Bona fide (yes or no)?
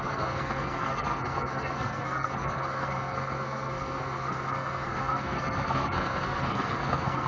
no